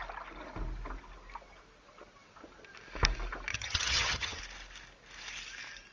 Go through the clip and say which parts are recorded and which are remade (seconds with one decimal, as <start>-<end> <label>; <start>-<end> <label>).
0.0-3.5 recorded; 3.5-4.4 remade; 4.4-5.9 recorded

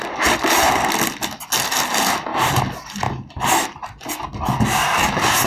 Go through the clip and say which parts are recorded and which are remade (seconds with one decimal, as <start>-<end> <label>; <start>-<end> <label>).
0.0-5.5 recorded